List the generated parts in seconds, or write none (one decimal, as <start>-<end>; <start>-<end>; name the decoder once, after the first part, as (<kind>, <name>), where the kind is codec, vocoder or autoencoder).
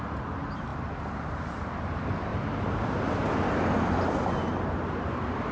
none